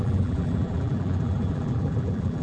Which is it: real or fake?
fake